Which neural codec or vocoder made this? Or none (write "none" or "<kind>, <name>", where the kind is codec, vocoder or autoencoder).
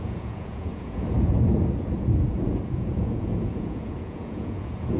vocoder, Vocos